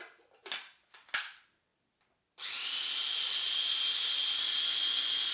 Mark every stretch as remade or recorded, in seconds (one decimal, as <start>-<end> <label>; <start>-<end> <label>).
0.0-5.3 recorded